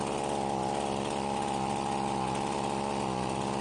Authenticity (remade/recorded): recorded